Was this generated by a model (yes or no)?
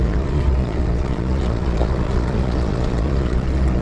yes